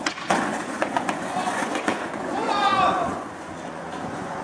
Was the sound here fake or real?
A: fake